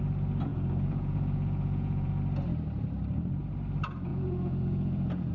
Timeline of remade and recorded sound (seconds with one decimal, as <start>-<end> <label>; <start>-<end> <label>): 0.0-0.5 recorded; 0.5-2.2 remade; 2.2-4.1 recorded; 4.1-5.3 remade

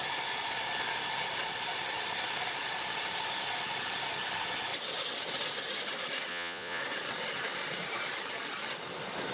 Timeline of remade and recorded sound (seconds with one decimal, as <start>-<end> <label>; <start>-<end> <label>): 0.0-6.3 recorded; 6.3-6.8 remade; 6.8-9.3 recorded

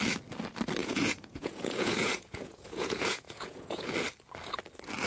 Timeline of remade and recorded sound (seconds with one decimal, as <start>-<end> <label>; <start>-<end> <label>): 0.0-0.8 recorded; 0.8-3.9 remade; 3.9-5.1 recorded